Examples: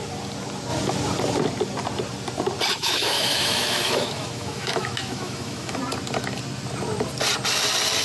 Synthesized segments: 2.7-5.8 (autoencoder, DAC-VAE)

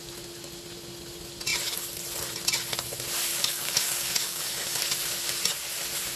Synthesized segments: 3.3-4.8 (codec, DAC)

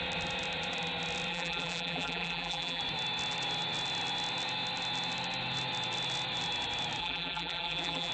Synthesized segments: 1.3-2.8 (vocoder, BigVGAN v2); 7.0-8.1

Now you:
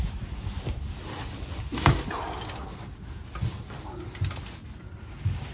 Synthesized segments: none

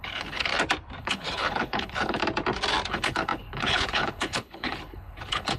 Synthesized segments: 0.0-0.5 (codec, HILCodec); 1.0-2.2; 2.9-5.6

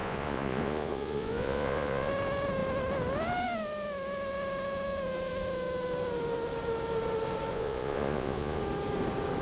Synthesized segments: 0.0-2.1 (vocoder, Vocos); 7.5-8.6